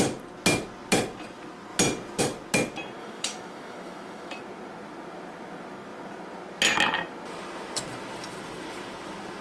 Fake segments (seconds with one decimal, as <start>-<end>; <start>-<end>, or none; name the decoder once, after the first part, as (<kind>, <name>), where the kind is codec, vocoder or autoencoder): 3.0-4.4 (autoencoder, DAC-VAE)